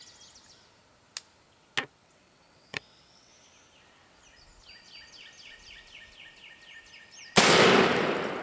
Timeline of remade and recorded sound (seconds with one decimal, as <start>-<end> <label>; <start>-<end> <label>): 0.0-2.0 recorded; 2.0-3.3 remade; 3.3-8.4 recorded